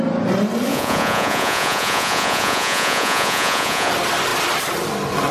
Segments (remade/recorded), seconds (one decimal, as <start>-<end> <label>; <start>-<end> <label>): 0.0-0.7 recorded; 0.7-3.9 remade; 3.9-5.3 recorded